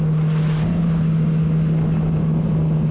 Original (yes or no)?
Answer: yes